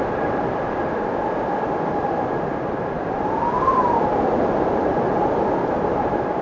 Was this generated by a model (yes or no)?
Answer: yes